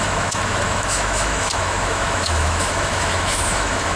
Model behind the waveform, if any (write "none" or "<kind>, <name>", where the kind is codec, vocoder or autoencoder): autoencoder, DAC-VAE